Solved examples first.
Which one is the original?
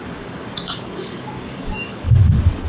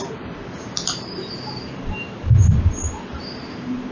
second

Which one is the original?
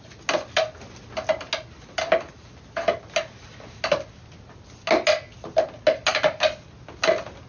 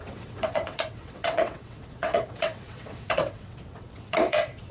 first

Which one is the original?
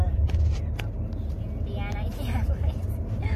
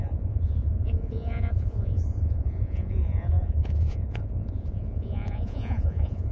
first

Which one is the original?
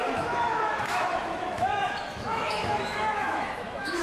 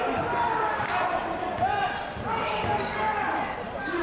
second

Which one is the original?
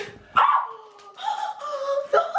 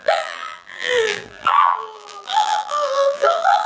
first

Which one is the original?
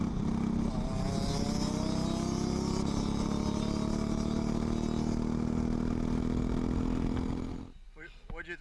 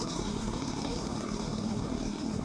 first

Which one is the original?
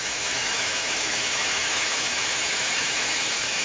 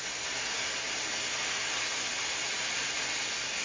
second